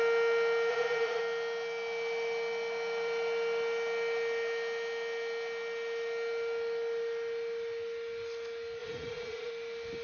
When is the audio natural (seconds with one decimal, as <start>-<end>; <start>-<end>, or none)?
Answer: 0.0-0.7; 1.2-8.8; 9.5-10.0